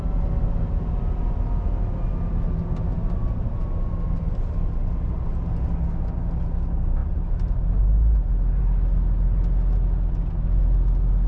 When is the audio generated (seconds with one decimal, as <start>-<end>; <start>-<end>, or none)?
none